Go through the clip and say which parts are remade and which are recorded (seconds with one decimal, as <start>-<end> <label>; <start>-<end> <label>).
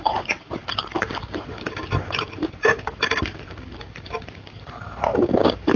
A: 0.0-5.8 remade